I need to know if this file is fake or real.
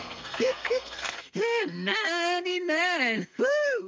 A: fake